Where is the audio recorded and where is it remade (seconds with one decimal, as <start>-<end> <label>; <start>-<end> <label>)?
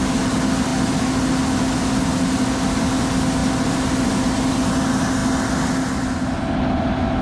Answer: 0.0-7.2 recorded